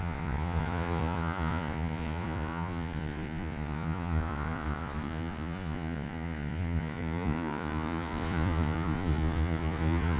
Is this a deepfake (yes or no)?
yes